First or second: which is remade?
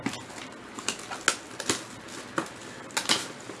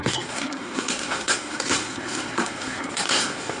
second